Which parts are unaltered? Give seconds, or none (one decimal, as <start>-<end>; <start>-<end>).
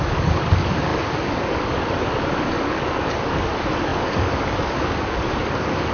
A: none